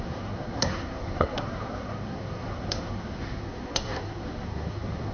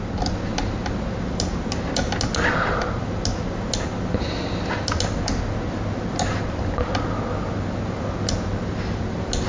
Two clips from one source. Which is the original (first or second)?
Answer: second